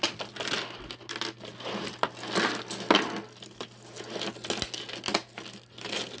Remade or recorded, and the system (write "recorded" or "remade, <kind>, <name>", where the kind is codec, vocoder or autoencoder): recorded